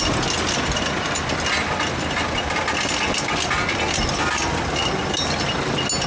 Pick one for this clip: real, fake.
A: real